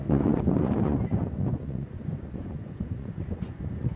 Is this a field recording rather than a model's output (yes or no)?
no